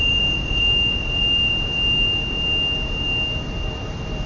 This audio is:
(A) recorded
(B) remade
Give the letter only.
B